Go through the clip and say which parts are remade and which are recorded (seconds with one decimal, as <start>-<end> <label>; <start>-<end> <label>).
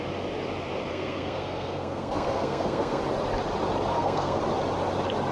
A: 0.0-0.9 recorded; 0.9-3.0 remade; 3.0-3.9 recorded; 3.9-4.4 remade; 4.4-5.3 recorded